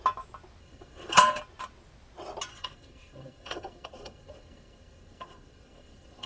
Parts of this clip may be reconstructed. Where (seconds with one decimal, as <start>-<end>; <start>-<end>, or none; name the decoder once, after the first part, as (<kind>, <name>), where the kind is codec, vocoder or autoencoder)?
0.6-1.4 (codec, SNAC); 2.5-6.3